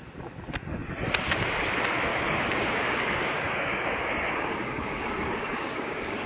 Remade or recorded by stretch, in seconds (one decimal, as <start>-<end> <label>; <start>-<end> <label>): 0.0-2.1 recorded; 2.1-6.3 remade